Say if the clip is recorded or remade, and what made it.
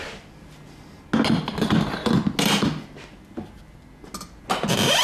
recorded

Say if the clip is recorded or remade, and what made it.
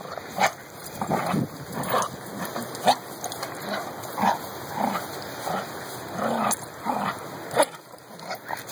recorded